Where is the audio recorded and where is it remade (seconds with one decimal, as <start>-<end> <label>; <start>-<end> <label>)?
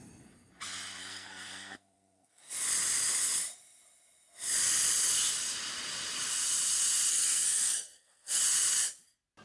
0.0-1.0 recorded; 1.0-2.5 remade; 2.5-7.1 recorded; 7.1-8.4 remade; 8.4-9.4 recorded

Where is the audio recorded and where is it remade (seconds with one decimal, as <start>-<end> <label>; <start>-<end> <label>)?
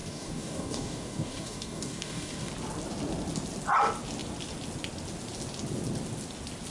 0.0-2.5 remade; 2.5-6.7 recorded